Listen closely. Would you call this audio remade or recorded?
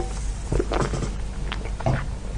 recorded